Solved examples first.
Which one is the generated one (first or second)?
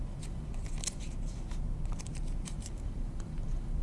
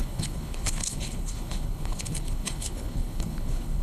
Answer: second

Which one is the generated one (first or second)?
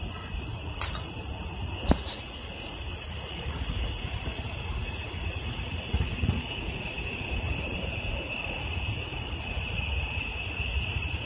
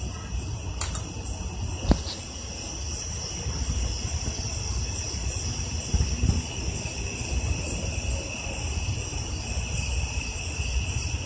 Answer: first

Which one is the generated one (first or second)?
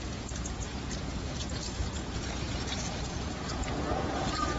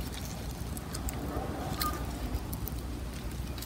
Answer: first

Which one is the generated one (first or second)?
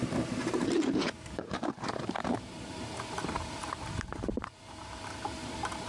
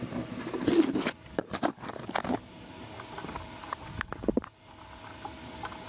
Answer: first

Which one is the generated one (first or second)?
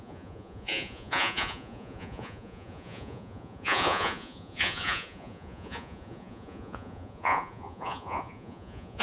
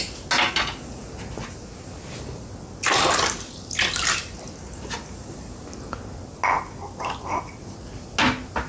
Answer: first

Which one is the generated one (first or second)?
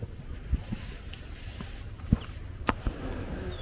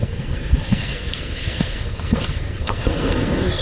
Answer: second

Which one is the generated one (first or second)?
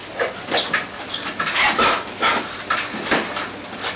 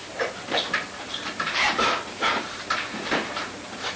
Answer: second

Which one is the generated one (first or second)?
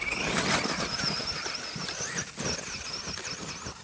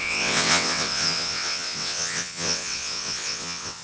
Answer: second